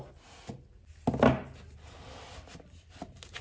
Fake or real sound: real